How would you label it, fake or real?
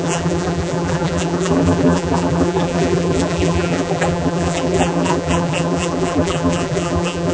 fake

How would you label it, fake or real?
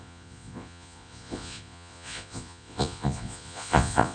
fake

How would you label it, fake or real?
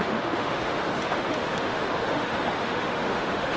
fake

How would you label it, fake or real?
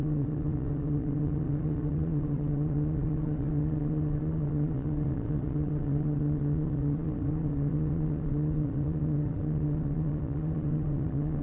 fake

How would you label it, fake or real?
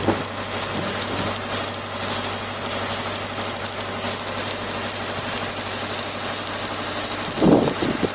real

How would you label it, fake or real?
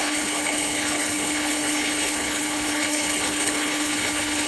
fake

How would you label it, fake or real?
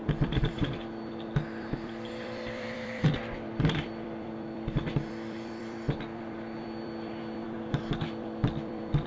fake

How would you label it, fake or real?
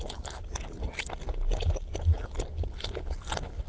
real